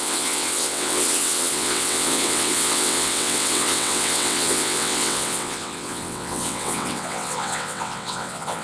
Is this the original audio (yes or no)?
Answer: no